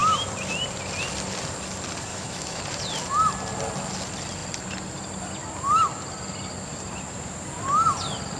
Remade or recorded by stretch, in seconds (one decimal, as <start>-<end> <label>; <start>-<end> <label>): 0.0-2.1 recorded; 2.1-2.6 remade; 2.6-8.4 recorded